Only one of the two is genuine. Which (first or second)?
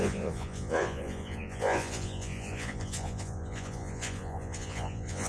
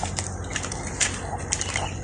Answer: second